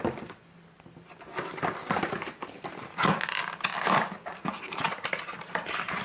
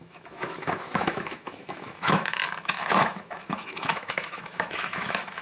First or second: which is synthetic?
second